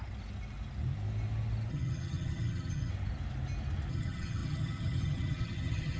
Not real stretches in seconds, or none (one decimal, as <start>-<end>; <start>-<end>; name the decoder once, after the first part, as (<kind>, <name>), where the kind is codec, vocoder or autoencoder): 1.7-2.9 (vocoder, HiFi-GAN); 3.9-6.0